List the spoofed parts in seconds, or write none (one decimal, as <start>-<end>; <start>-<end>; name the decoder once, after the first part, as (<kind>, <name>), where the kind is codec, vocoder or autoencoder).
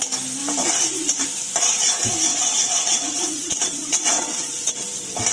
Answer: 2.3-4.7 (vocoder, WaveNeXt)